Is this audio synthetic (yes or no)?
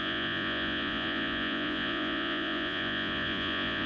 yes